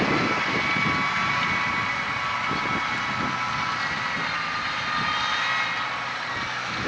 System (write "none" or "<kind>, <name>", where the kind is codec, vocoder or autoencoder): none